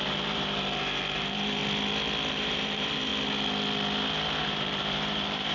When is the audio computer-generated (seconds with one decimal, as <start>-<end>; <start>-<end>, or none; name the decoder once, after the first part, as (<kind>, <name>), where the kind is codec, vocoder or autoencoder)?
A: 0.0-1.6 (vocoder, BigVGAN v2); 2.3-3.1; 4.4-5.5